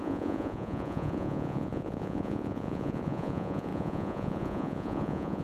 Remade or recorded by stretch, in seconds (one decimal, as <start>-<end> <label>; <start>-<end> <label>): 0.0-5.4 remade